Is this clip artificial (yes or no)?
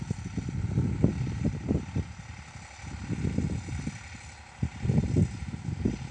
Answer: no